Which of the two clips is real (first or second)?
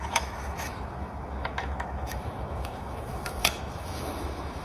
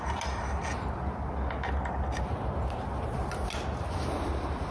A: second